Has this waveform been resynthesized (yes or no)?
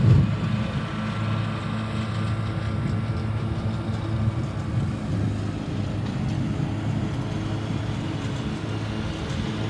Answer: no